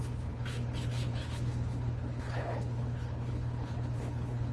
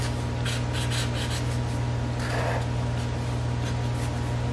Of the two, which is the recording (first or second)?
second